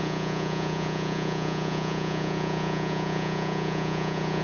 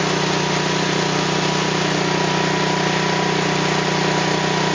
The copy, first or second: first